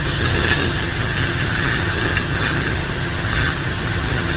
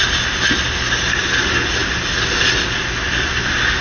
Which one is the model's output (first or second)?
first